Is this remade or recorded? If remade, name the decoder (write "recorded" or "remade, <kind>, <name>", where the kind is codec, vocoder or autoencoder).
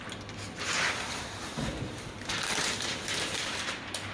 recorded